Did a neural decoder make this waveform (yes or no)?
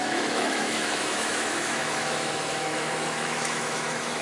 yes